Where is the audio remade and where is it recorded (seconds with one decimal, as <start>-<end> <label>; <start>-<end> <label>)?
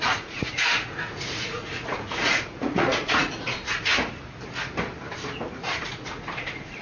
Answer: 0.0-3.9 remade; 3.9-5.6 recorded; 5.6-6.8 remade